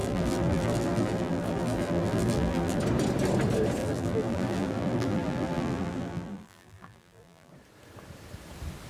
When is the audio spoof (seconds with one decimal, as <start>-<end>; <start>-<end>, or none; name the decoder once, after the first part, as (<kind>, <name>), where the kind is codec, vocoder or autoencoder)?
0.0-2.8 (vocoder, BigVGAN v2); 3.8-7.5

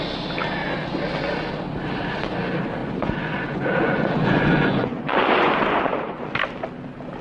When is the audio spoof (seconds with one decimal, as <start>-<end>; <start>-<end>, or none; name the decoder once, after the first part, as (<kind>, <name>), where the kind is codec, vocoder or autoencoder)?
2.8-6.2 (vocoder, Vocos)

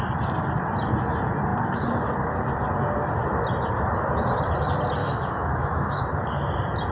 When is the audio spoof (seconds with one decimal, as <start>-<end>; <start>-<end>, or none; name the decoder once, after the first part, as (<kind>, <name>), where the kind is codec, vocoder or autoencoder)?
5.0-6.0 (autoencoder, DAC-VAE)